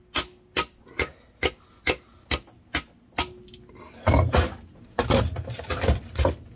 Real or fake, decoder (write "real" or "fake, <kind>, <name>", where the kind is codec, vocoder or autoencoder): real